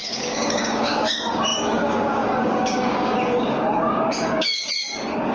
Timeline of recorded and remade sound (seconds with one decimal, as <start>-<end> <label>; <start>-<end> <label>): 0.0-5.3 remade